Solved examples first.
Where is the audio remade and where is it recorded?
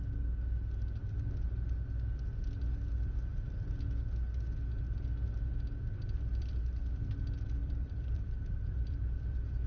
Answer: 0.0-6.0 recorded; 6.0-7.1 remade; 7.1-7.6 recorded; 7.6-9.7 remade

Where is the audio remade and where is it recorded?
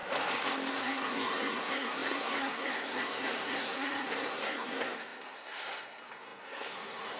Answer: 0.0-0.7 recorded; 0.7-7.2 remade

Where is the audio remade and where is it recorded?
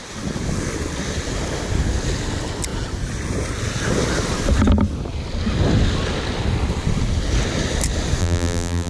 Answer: 0.0-8.2 recorded; 8.2-8.9 remade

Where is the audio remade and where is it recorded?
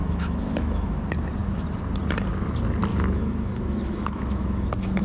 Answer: 0.0-1.0 remade; 1.0-2.9 recorded; 2.9-5.0 remade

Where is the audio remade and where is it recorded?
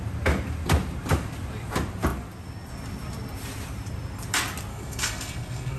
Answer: 0.0-4.7 recorded; 4.7-5.8 remade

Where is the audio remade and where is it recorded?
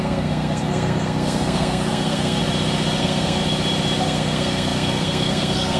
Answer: 0.0-2.4 remade; 2.4-3.0 recorded; 3.0-3.4 remade; 3.4-4.0 recorded; 4.0-5.8 remade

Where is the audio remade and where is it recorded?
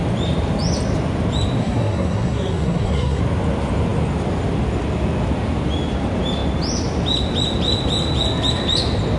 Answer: 0.0-1.6 recorded; 1.6-3.2 remade; 3.2-9.2 recorded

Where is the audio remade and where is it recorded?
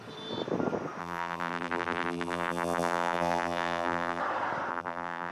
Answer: 0.0-1.0 recorded; 1.0-4.2 remade; 4.2-4.7 recorded; 4.7-5.3 remade